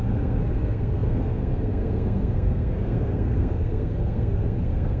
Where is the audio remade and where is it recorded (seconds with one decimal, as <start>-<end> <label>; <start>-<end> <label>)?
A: 0.0-5.0 remade